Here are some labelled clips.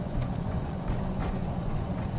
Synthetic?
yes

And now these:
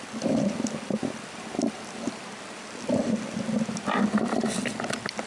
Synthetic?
no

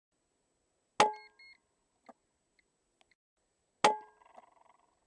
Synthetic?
no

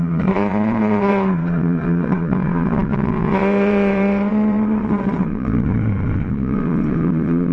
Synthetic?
yes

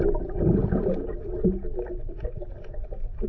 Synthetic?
no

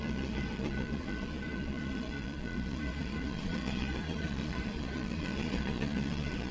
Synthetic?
yes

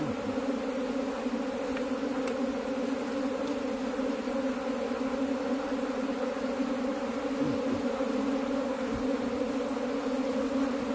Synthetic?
no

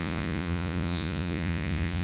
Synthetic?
yes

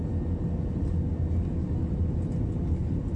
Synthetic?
no